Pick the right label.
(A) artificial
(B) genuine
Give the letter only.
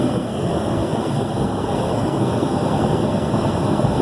A